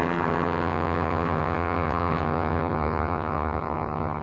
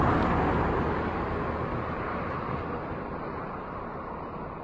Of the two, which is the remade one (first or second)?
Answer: first